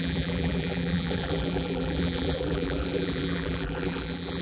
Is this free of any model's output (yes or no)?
no